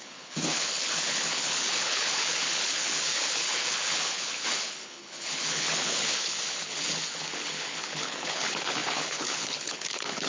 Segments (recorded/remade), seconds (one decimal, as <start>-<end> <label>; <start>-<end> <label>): 0.0-10.3 remade